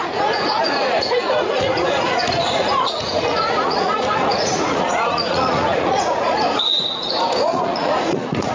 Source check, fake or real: fake